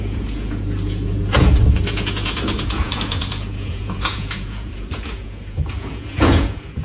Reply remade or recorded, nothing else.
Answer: remade